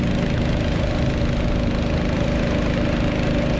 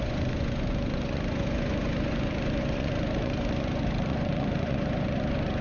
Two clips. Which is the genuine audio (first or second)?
first